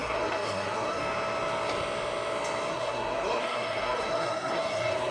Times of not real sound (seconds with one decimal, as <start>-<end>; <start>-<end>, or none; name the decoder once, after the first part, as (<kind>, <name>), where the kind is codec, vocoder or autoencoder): 0.0-1.0 (codec, SNAC); 2.7-5.1